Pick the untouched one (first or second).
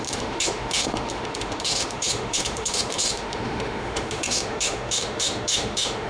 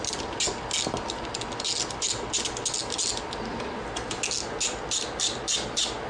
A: second